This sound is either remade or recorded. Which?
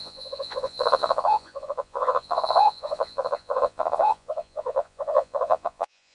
remade